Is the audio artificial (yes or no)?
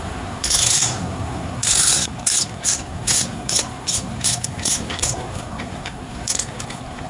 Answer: yes